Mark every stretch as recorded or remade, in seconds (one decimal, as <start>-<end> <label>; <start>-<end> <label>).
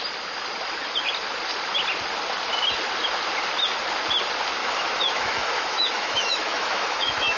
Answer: 0.0-4.6 recorded; 4.6-7.4 remade